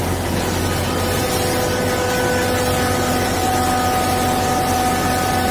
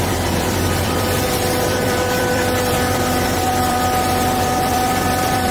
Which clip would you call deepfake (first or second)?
second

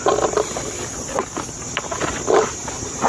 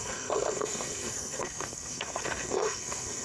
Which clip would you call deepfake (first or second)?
second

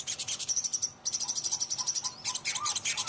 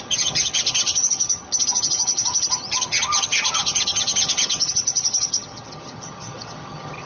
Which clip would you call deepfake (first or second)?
second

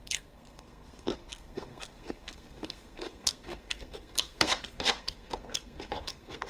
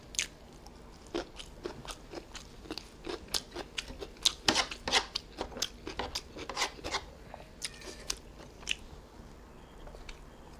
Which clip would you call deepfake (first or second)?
first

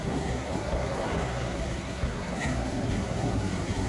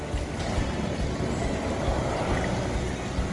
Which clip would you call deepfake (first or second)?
first